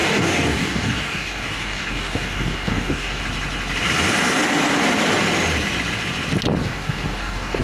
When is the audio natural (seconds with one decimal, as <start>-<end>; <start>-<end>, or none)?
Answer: 3.2-6.6